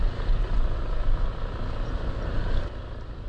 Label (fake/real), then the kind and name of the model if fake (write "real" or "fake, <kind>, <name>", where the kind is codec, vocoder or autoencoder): real